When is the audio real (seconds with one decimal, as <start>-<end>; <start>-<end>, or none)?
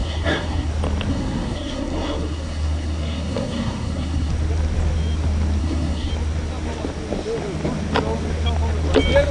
0.7-1.1; 4.3-5.6; 6.1-9.3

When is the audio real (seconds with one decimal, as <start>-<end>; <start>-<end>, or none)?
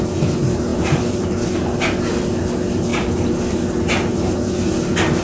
0.0-5.2